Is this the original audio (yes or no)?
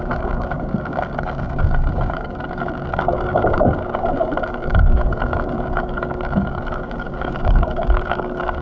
no